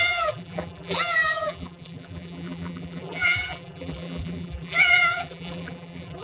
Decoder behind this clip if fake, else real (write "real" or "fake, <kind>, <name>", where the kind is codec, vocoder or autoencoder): fake, vocoder, BigVGAN v2